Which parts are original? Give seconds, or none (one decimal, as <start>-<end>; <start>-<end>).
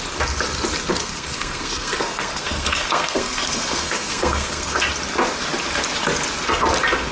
0.0-1.0; 4.8-7.1